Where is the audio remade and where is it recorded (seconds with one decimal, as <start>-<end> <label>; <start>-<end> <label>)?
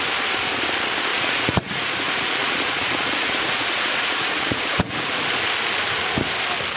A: 0.0-1.1 recorded; 1.1-5.2 remade; 5.2-6.8 recorded